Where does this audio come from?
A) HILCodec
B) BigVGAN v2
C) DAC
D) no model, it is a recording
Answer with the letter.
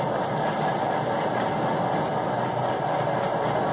D